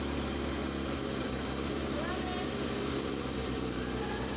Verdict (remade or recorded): recorded